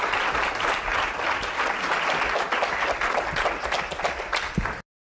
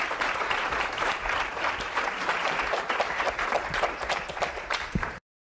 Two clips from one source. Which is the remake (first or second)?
second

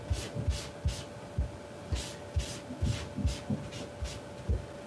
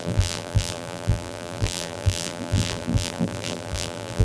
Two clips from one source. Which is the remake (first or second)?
second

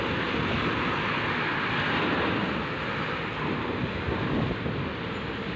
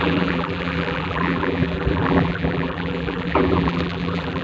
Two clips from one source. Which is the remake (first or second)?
second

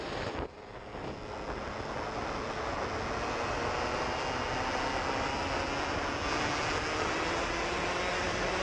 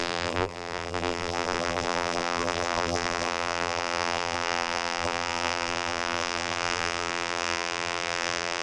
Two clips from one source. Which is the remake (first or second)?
second